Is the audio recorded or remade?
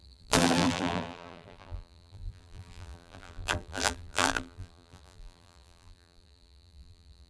remade